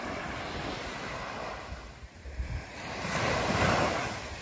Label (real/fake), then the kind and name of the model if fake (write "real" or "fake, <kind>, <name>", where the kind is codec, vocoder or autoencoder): real